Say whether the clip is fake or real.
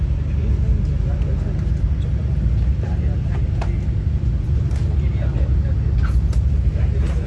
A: real